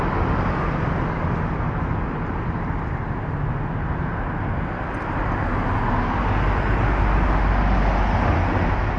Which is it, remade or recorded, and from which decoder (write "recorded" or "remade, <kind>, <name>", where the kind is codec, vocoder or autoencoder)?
recorded